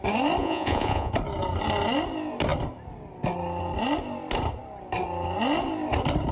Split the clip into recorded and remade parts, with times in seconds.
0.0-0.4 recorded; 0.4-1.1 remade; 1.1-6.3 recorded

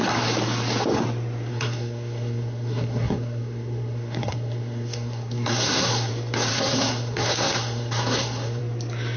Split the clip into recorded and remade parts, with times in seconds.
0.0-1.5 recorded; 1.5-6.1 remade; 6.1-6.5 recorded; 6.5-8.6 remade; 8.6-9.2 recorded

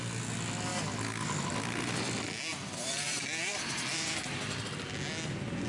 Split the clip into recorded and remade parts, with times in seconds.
0.0-2.5 recorded; 2.5-4.6 remade; 4.6-5.7 recorded

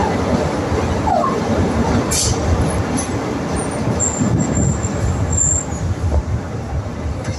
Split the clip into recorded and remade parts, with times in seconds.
0.0-7.4 recorded

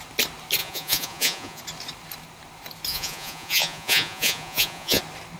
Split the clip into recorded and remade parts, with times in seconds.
0.0-0.6 recorded; 0.6-1.6 remade; 1.6-2.9 recorded; 2.9-5.0 remade; 5.0-5.4 recorded